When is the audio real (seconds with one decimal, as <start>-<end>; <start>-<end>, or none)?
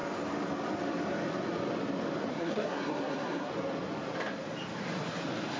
0.0-2.3; 3.5-5.6